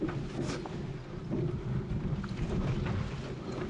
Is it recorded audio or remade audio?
recorded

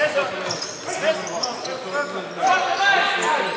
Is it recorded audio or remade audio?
recorded